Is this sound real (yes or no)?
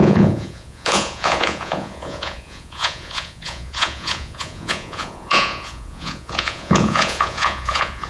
no